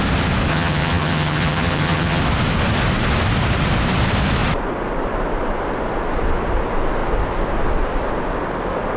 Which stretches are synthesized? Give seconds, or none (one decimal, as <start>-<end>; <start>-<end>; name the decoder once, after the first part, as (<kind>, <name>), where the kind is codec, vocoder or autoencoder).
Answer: 0.5-2.2 (vocoder, HiFi-GAN)